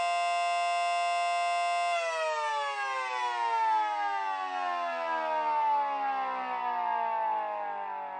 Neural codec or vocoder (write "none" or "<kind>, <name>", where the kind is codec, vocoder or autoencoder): none